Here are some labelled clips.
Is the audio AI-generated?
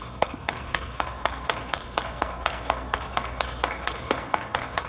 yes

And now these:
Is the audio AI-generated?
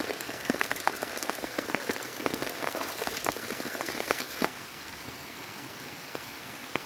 yes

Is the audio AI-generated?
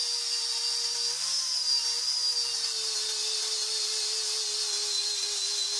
no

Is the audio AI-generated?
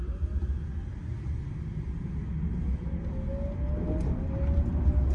no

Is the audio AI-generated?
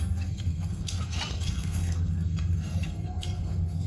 yes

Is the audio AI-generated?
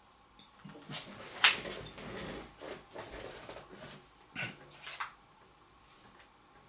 no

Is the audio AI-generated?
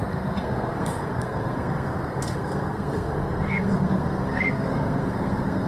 yes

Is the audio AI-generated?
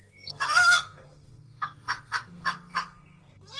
yes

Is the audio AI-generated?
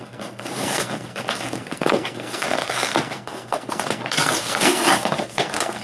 yes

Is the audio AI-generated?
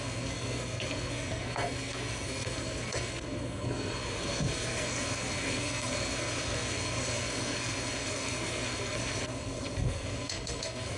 yes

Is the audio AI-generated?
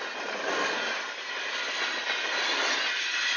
no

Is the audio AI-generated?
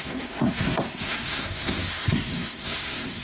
yes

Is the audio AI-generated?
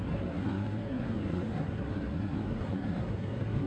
yes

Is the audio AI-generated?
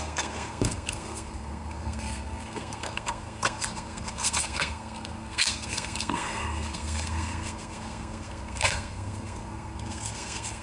yes